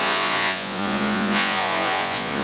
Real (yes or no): no